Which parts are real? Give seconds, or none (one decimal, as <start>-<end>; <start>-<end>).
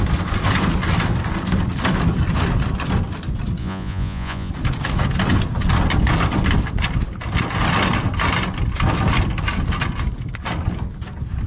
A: 0.0-3.6; 4.5-11.5